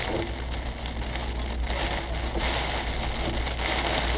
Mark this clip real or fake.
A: real